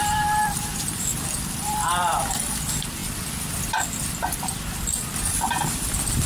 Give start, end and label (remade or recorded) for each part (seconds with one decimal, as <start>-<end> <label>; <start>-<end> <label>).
0.0-3.0 remade; 3.0-3.9 recorded; 3.9-6.3 remade